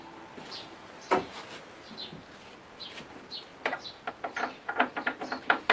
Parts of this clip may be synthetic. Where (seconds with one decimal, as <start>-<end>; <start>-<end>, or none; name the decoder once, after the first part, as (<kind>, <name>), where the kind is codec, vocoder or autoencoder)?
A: none